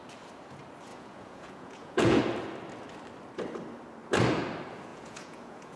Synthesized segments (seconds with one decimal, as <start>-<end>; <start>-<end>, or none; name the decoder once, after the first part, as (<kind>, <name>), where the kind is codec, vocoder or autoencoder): 0.9-2.2 (vocoder, Vocos); 4.9-5.8